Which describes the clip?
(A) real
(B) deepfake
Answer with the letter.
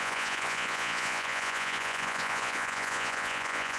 B